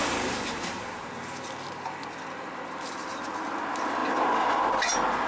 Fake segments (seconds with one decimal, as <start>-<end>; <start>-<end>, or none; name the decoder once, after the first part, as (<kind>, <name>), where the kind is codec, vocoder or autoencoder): none